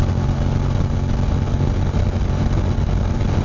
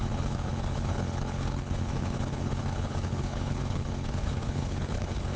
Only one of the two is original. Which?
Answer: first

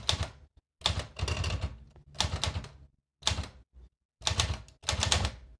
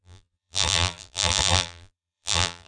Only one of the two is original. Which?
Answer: first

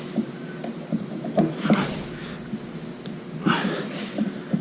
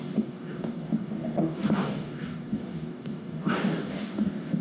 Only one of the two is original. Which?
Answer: first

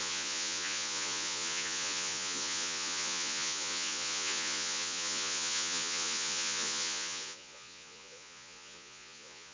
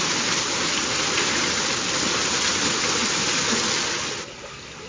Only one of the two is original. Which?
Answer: second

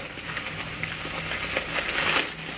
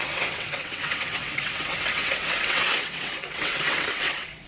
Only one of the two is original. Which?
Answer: first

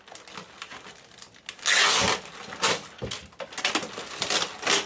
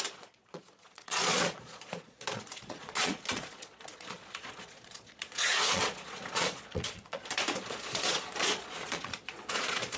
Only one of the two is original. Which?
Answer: first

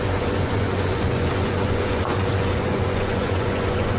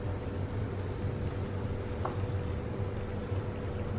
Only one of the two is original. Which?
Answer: second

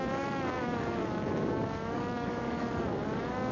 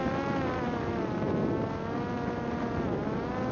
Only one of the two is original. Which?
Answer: second